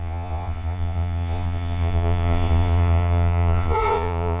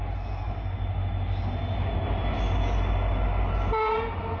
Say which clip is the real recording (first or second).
second